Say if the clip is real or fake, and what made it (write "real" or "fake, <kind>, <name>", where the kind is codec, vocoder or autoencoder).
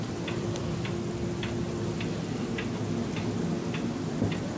real